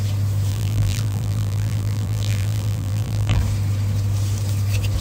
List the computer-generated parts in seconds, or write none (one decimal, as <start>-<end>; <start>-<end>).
0.5-3.4